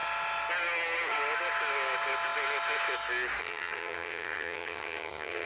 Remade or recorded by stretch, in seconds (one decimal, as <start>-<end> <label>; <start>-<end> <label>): 0.0-3.4 recorded; 3.4-5.5 remade